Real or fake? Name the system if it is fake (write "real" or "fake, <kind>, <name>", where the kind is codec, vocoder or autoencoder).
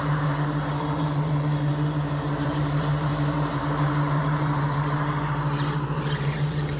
fake, vocoder, BigVGAN v2